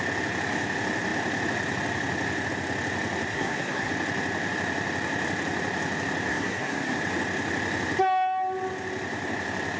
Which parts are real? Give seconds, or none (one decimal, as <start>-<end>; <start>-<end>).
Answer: 0.0-3.3; 3.9-6.3; 7.0-9.8